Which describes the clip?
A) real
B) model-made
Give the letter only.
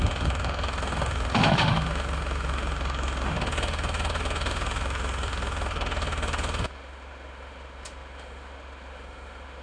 B